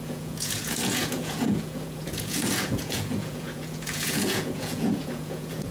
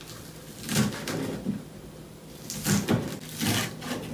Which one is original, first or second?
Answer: second